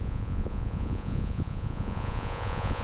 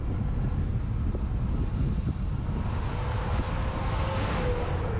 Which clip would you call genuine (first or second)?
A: second